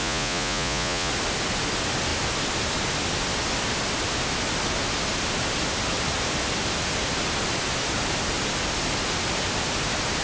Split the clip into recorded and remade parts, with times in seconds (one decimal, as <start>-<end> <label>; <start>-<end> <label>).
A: 0.0-1.1 remade; 1.1-10.2 recorded